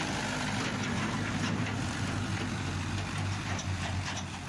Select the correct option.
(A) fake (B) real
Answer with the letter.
A